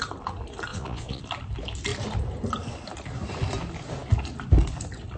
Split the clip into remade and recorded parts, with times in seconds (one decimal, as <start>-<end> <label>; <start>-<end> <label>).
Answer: 0.0-0.7 recorded; 0.7-1.2 remade; 1.2-5.2 recorded